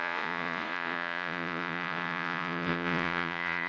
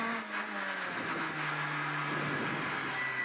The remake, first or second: first